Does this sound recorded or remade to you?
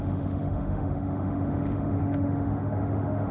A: remade